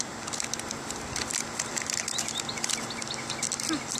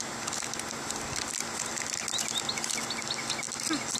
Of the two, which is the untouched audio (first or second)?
second